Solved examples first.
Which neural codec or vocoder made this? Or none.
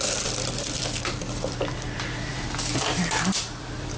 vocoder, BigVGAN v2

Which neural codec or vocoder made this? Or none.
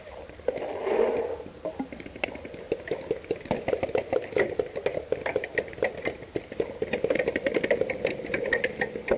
none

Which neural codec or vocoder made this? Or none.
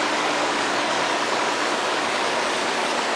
codec, DAC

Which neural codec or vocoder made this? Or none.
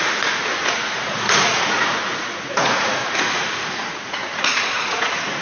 vocoder, Vocos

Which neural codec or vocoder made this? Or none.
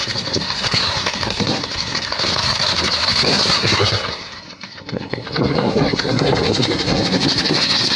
codec, SNAC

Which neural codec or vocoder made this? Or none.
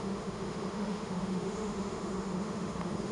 autoencoder, DAC-VAE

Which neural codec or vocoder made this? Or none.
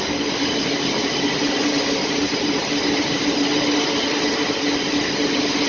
none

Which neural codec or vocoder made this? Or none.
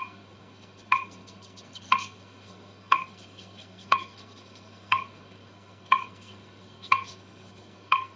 codec, SNAC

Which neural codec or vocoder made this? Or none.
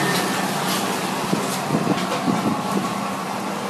none